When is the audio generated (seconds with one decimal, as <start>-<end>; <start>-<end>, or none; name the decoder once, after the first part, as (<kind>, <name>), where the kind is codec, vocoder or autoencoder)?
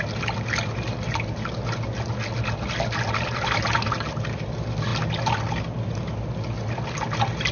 none